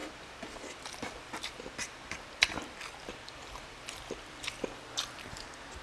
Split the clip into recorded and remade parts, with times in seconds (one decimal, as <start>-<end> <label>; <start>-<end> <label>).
0.0-5.8 remade